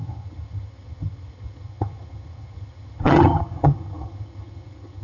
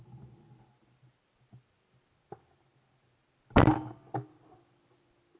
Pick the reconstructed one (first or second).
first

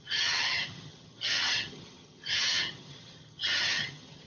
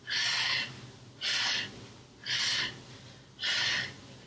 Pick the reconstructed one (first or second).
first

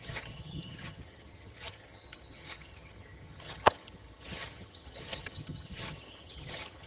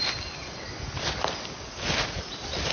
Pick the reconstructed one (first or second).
first